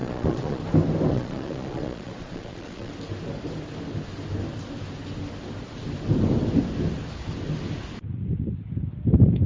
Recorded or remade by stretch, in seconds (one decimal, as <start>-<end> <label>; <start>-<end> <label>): 0.0-0.6 remade; 0.6-1.1 recorded; 1.1-2.9 remade; 2.9-9.5 recorded